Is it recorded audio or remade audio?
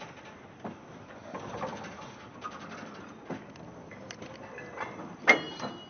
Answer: recorded